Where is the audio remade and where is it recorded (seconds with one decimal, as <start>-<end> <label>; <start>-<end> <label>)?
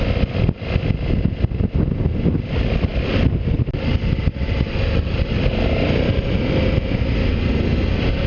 0.0-8.3 recorded